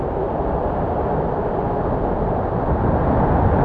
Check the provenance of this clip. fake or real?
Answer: real